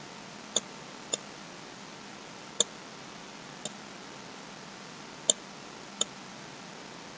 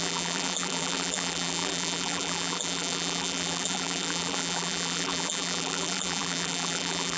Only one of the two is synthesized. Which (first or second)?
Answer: second